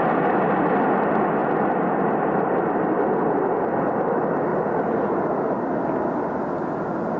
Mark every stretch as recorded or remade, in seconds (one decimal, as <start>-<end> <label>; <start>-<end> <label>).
0.0-7.2 recorded